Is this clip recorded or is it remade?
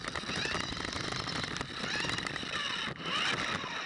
recorded